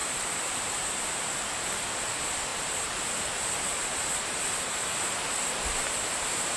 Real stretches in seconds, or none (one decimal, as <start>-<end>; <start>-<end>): 0.9-2.5